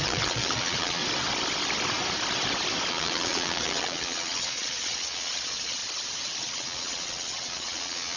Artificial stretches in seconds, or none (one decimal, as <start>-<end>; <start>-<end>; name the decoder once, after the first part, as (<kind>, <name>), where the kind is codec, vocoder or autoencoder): 0.0-1.0 (vocoder, Vocos); 2.9-5.8; 6.4-8.2